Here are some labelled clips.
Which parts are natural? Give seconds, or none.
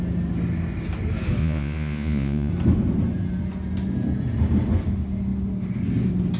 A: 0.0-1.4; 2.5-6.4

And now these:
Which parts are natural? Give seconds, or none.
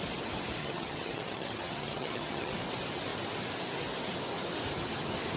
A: 0.0-0.6; 2.5-5.4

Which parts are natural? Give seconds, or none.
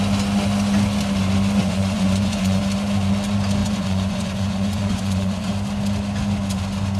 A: 0.0-1.6; 2.6-3.6; 5.5-7.0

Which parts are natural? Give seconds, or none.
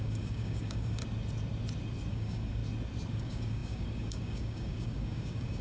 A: 1.0-2.1; 2.6-3.1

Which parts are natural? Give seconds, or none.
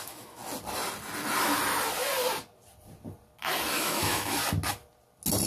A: 0.4-3.7; 4.4-5.5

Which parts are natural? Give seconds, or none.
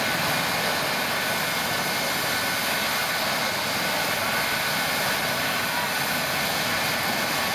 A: 0.0-7.5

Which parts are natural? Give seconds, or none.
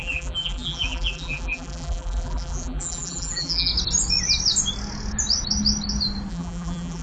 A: 3.7-6.3